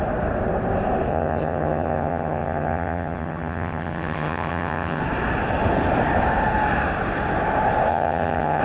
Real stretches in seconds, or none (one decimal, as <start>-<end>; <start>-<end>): 0.0-1.1; 5.0-7.9